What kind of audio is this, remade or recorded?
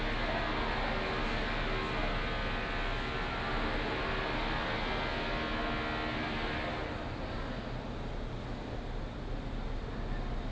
recorded